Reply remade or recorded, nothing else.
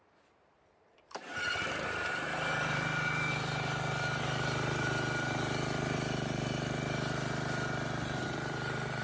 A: remade